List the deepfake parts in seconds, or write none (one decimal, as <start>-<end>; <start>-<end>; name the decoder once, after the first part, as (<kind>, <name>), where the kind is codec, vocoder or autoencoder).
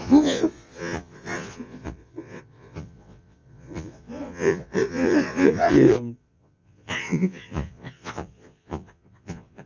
0.0-9.7 (vocoder, Vocos)